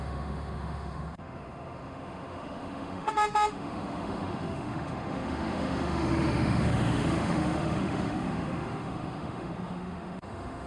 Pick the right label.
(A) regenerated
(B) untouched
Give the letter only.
A